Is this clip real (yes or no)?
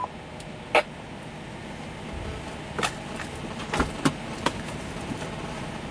yes